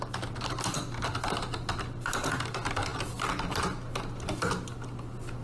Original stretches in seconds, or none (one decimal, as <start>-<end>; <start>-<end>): 0.0-5.4